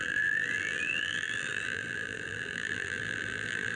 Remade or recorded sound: remade